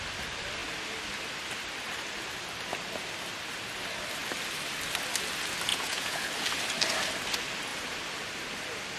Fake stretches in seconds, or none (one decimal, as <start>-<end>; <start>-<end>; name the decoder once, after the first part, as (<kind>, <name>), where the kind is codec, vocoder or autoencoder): 5.7-6.3 (vocoder, Vocos)